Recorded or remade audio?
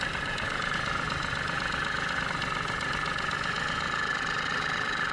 recorded